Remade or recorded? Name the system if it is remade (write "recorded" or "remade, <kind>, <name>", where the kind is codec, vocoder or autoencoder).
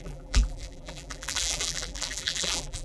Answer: remade, vocoder, BigVGAN v2